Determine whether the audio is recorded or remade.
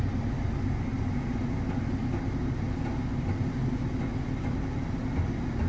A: recorded